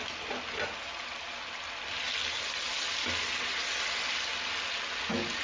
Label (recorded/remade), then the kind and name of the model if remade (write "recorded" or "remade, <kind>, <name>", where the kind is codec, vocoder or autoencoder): recorded